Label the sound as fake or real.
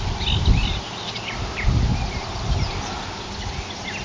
real